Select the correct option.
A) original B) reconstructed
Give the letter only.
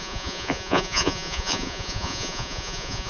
B